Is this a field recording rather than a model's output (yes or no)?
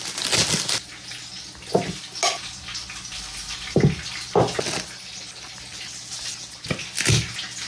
yes